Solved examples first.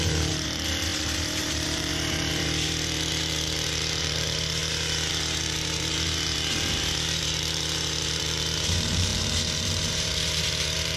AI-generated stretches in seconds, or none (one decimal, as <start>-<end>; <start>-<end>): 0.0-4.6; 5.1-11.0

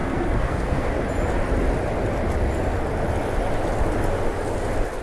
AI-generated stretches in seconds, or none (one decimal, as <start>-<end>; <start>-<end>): 0.0-0.9

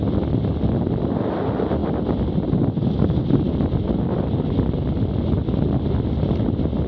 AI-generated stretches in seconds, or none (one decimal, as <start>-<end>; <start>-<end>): none

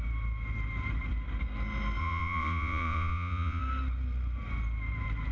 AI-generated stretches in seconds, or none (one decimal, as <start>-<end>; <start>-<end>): 2.0-3.6

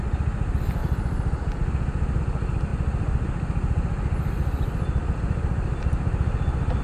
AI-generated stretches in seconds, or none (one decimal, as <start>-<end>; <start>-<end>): 0.8-2.2

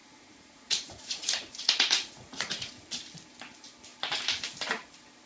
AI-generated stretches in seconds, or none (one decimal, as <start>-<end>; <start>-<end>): 0.0-2.7

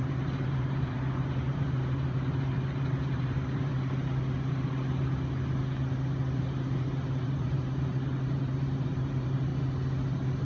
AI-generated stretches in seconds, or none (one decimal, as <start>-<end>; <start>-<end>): 0.0-3.7; 6.4-9.5

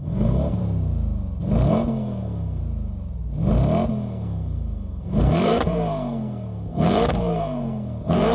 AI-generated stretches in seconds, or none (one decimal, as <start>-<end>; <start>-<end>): 0.0-0.6; 1.7-2.6; 3.9-8.3